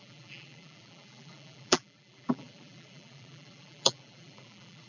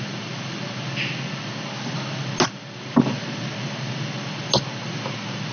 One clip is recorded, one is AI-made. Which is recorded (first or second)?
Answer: second